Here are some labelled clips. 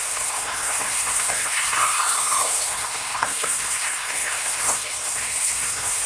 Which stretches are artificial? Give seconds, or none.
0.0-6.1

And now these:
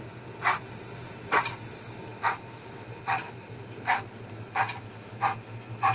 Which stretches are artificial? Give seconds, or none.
none

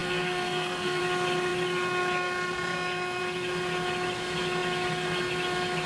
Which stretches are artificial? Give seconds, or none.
0.0-1.0

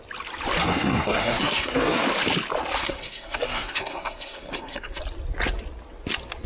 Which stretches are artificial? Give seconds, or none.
0.6-2.0; 2.8-5.0